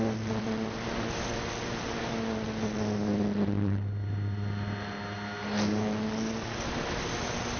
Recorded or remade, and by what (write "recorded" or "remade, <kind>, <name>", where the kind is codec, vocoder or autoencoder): recorded